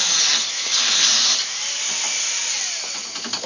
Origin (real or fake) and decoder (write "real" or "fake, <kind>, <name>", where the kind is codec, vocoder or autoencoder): real